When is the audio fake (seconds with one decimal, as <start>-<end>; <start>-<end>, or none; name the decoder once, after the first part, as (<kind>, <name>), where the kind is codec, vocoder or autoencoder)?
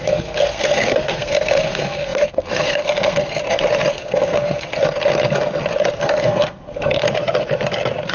0.0-3.4 (codec, SNAC); 3.9-4.7; 6.0-7.0